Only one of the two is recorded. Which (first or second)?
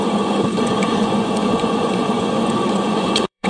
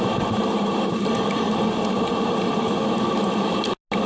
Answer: second